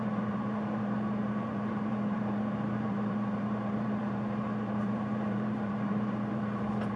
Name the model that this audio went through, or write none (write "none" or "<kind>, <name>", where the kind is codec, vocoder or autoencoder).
vocoder, BigVGAN v2